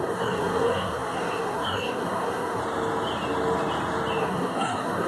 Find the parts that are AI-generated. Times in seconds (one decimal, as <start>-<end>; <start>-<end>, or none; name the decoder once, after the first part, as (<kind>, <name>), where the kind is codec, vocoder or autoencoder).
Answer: 0.0-2.6 (codec, SNAC); 4.2-5.1